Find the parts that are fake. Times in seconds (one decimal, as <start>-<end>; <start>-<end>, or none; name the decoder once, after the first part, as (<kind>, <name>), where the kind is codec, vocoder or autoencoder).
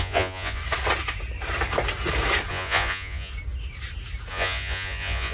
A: 0.0-0.6 (vocoder, Vocos); 2.5-3.3; 4.3-5.3